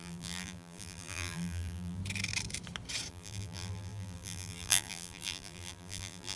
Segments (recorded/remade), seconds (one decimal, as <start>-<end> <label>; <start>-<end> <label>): 0.0-2.0 remade; 2.0-3.1 recorded; 3.1-6.4 remade